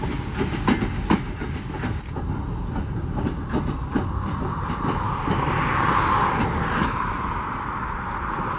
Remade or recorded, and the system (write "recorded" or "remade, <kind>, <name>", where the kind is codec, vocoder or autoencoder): recorded